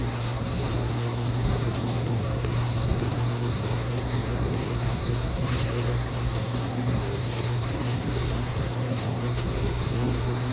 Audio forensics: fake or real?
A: fake